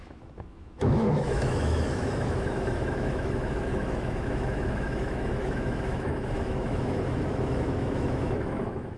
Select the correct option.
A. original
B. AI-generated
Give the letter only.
B